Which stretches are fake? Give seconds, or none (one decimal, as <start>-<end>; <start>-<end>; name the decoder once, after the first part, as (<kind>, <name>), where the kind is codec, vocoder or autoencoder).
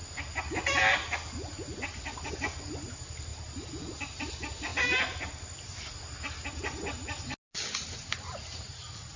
none